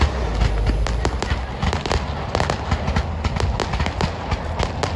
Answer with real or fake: real